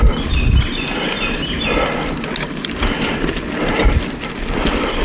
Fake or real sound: real